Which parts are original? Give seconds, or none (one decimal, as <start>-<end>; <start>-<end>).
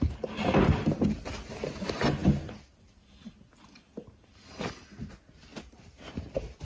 0.0-6.6